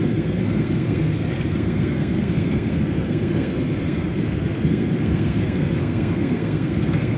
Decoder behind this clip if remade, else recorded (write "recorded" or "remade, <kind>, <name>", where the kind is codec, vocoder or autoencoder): remade, codec, SNAC